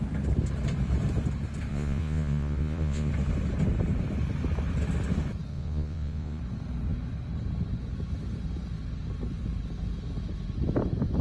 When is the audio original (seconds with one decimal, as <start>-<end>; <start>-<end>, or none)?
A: 0.0-1.7; 3.1-5.5; 6.4-11.2